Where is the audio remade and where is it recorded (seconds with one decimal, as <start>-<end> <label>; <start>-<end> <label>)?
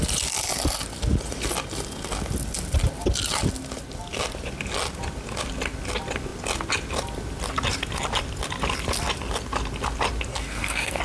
0.0-10.3 recorded; 10.3-11.0 remade